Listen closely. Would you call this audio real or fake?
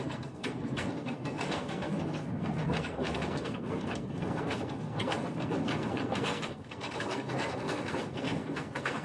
fake